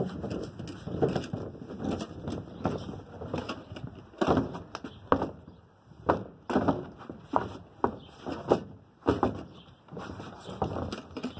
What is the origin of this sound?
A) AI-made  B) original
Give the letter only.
B